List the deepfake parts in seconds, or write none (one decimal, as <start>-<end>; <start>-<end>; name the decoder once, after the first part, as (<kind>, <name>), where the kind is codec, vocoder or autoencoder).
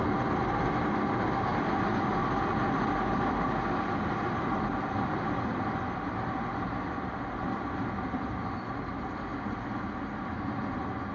none